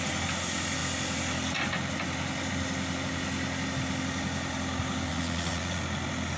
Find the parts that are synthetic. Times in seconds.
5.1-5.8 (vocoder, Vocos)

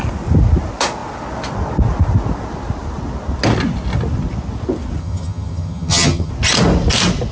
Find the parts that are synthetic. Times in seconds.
5.0-6.3 (vocoder, HiFi-GAN)

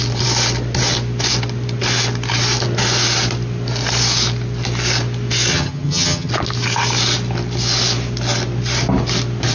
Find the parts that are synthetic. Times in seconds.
5.5-6.3 (vocoder, HiFi-GAN)

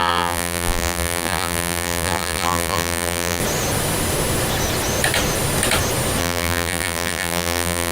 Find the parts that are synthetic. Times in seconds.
0.0-3.4 (vocoder, BigVGAN v2); 6.2-7.9

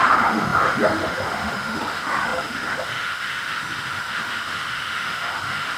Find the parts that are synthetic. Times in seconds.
0.0-5.8 (autoencoder, DAC-VAE)

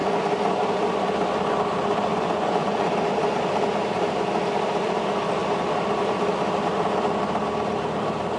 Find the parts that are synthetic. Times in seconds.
2.1-2.9 (vocoder, Vocos)